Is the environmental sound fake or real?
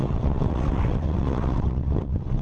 fake